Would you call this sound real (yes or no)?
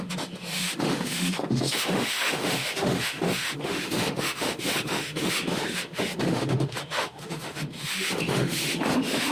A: no